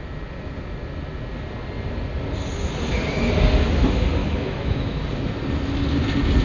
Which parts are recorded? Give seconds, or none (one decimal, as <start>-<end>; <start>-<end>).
0.0-4.2; 5.0-6.4